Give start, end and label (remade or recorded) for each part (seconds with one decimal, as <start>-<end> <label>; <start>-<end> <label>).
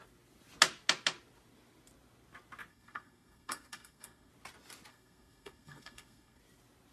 0.0-2.7 recorded; 2.7-4.3 remade; 4.3-4.9 recorded; 4.9-6.4 remade; 6.4-6.9 recorded